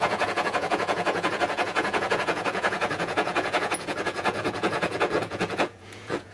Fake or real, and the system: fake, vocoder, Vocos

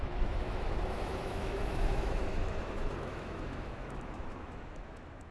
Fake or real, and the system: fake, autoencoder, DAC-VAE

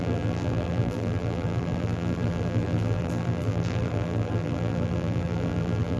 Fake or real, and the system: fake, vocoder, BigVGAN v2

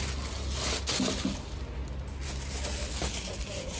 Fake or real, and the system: real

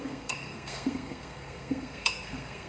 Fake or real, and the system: fake, codec, SNAC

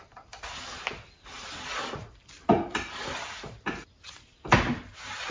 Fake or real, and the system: real